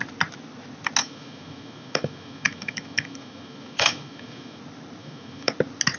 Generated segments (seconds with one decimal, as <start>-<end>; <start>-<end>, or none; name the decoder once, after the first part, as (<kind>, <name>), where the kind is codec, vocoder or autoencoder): 1.0-4.6 (autoencoder, DAC-VAE); 5.0-5.5